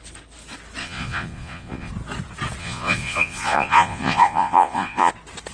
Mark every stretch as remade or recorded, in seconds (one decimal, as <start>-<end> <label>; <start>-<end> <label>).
0.0-0.8 recorded; 0.8-1.9 remade; 1.9-2.6 recorded; 2.6-5.1 remade; 5.1-5.5 recorded